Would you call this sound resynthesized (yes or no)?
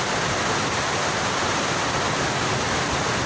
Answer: no